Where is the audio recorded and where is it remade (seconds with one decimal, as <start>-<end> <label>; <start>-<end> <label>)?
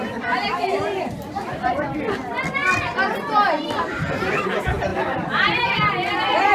0.0-2.6 remade; 2.6-3.6 recorded; 3.6-6.5 remade